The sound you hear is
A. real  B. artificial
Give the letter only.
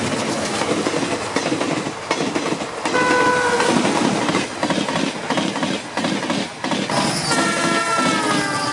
A